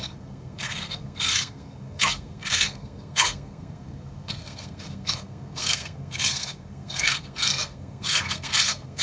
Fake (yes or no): yes